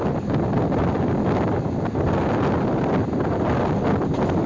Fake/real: real